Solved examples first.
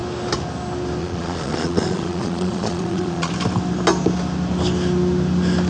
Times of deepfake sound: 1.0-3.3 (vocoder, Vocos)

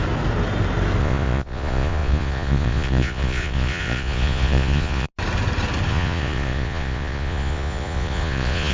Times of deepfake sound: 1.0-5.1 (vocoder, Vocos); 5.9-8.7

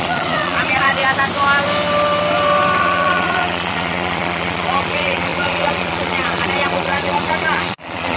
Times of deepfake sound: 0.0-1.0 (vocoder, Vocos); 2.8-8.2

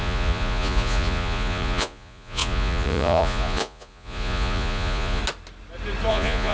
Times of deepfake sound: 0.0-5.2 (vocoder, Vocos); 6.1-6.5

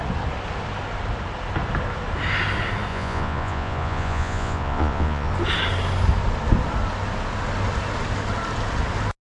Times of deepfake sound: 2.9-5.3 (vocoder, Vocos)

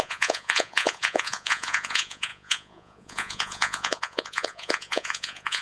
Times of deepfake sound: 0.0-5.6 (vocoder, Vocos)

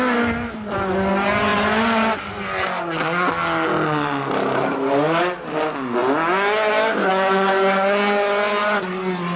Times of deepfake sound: none